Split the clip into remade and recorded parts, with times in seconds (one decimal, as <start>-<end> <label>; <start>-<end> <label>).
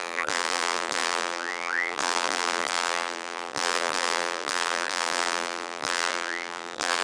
0.0-7.0 remade